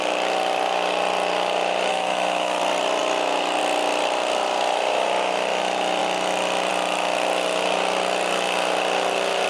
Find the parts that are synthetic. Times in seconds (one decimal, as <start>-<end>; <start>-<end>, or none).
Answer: 1.9-2.6